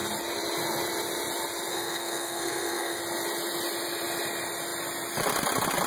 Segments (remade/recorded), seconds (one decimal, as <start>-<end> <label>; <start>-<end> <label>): 0.0-1.7 recorded; 1.7-3.0 remade; 3.0-5.9 recorded